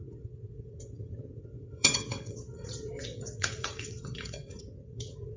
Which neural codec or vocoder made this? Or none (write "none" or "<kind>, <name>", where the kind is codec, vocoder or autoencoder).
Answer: vocoder, WaveNeXt